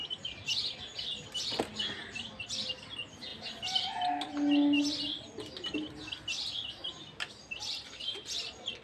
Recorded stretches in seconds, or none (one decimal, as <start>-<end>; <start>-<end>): 0.0-8.8